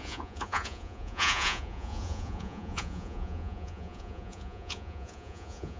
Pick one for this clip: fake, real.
fake